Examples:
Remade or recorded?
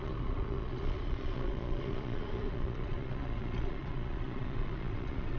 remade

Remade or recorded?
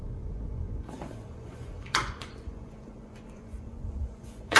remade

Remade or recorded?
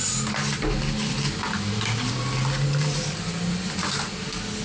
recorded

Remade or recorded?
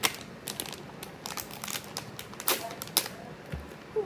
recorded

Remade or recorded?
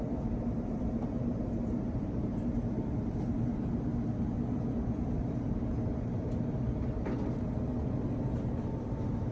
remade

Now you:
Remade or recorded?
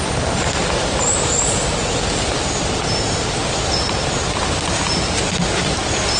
recorded